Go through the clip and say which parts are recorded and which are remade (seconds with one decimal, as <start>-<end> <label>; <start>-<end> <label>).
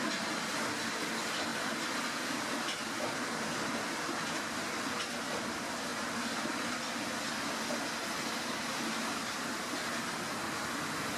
0.0-11.2 recorded